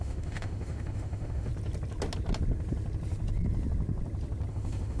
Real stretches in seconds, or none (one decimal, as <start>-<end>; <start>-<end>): 1.5-4.5